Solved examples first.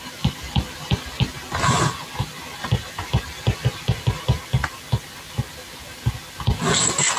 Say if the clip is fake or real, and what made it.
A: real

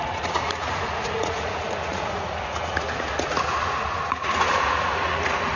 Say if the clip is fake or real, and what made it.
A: fake, vocoder, Vocos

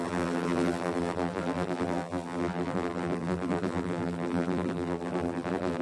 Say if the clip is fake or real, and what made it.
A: fake, vocoder, BigVGAN v2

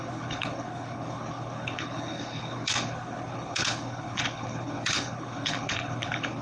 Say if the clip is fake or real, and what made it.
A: fake, codec, HILCodec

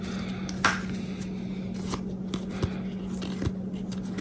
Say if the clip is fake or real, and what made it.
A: real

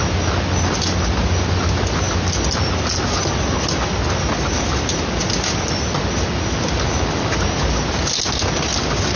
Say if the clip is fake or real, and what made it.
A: real